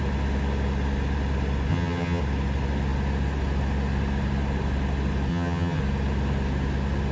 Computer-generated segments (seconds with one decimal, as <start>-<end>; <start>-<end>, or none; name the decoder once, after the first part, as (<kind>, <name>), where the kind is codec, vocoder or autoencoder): 1.7-2.2 (vocoder, HiFi-GAN); 5.3-5.8